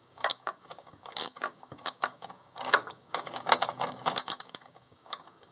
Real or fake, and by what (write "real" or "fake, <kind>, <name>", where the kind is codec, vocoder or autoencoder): fake, codec, DAC